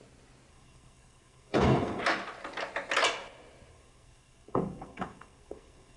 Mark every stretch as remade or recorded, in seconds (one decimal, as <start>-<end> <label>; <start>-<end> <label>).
0.0-0.5 recorded; 0.5-2.0 remade; 2.0-3.7 recorded; 3.7-6.0 remade